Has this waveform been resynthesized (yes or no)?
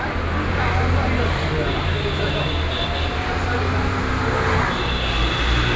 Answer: no